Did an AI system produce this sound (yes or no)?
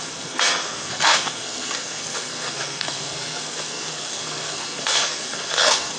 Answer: yes